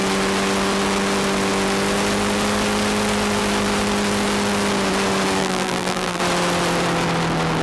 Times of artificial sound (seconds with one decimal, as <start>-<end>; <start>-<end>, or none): 5.4-6.2